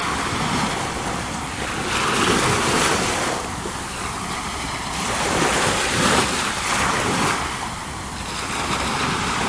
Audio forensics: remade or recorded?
recorded